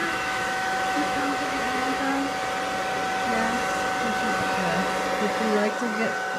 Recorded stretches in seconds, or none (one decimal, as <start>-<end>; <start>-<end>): 2.1-6.4